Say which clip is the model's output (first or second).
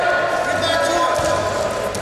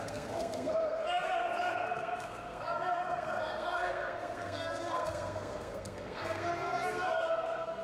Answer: second